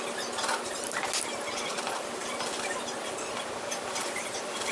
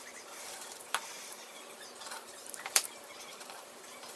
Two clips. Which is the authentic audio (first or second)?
first